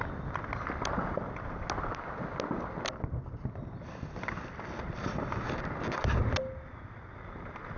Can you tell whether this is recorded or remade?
recorded